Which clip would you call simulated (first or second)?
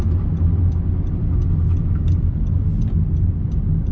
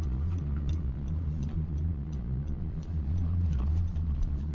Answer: second